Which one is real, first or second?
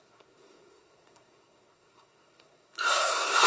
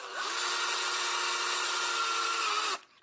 second